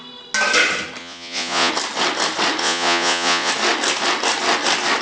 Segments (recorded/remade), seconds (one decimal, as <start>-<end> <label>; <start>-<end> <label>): 0.0-1.0 recorded; 1.0-1.7 remade; 1.7-2.6 recorded; 2.6-3.5 remade; 3.5-5.0 recorded